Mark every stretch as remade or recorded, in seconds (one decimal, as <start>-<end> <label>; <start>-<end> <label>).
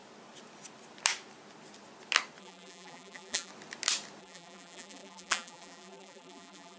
0.0-2.4 recorded; 2.4-3.5 remade; 3.5-4.2 recorded; 4.2-6.8 remade